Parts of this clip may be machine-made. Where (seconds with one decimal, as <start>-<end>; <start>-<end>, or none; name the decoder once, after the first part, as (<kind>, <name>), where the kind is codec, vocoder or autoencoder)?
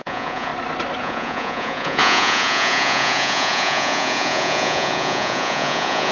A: 0.0-0.5 (vocoder, Vocos); 1.0-6.1